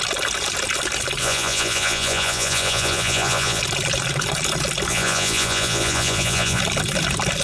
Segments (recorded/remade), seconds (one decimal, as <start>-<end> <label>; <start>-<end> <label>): 0.0-1.2 recorded; 1.2-3.6 remade; 3.6-4.9 recorded; 4.9-6.6 remade; 6.6-7.4 recorded